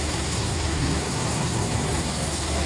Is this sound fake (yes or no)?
yes